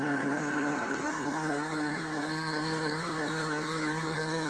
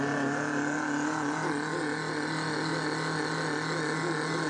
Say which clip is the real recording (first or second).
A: second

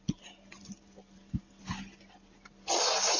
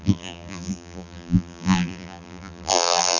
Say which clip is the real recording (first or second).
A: first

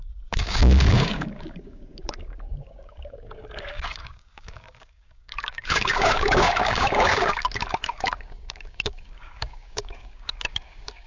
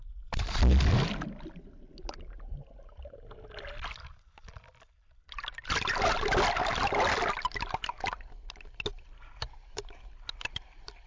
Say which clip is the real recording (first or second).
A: second